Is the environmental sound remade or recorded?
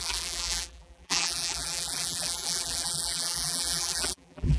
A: remade